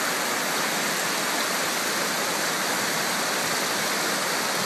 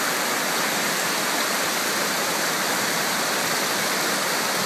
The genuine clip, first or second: first